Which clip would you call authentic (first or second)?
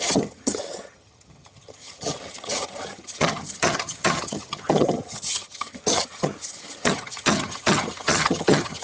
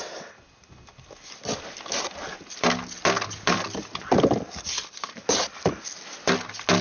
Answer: second